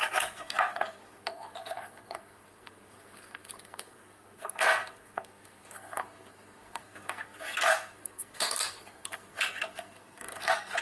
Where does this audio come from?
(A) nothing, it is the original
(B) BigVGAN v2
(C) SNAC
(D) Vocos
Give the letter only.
C